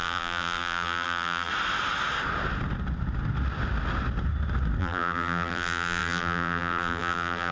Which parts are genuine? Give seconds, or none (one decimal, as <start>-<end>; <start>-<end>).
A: 1.5-4.8